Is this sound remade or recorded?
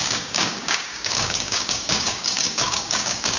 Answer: remade